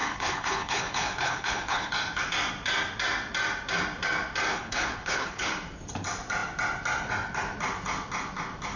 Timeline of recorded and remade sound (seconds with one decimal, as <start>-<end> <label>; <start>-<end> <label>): 0.0-1.9 remade; 1.9-4.5 recorded; 4.5-5.5 remade; 5.5-8.8 recorded

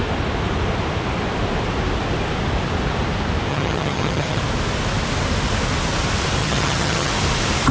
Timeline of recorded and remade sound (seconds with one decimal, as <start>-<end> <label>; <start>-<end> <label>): 0.0-3.5 recorded; 3.5-4.4 remade; 4.4-6.4 recorded; 6.4-7.1 remade; 7.1-7.7 recorded

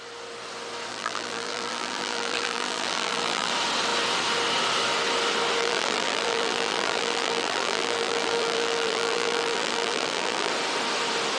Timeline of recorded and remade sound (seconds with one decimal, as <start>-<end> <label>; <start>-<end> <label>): 0.0-0.9 recorded; 0.9-3.5 remade; 3.5-5.6 recorded; 5.6-10.5 remade; 10.5-11.4 recorded

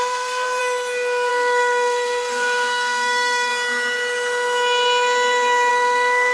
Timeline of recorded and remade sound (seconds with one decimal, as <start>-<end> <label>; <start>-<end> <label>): 0.0-0.6 remade; 0.6-1.3 recorded; 1.3-3.5 remade; 3.5-5.7 recorded; 5.7-6.3 remade

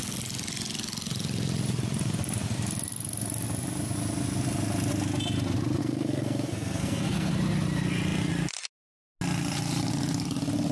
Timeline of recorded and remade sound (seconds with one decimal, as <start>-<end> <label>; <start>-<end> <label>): 0.0-5.8 recorded; 5.8-7.3 remade; 7.3-10.7 recorded

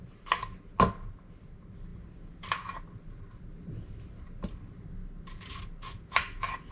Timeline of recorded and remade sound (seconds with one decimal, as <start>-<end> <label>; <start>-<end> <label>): 0.0-6.7 recorded